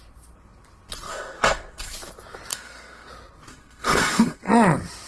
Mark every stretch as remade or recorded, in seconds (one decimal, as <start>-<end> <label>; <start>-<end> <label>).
0.0-1.1 recorded; 1.1-1.9 remade; 1.9-2.5 recorded; 2.5-3.1 remade; 3.1-3.5 recorded; 3.5-4.5 remade; 4.5-5.1 recorded